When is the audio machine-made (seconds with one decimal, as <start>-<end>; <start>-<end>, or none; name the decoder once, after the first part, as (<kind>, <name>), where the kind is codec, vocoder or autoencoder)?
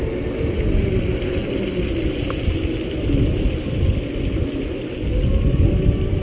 none